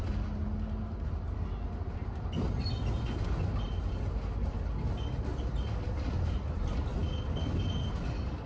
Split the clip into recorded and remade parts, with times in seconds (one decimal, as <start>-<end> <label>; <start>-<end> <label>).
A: 0.0-8.5 recorded